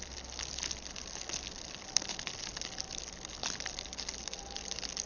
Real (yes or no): yes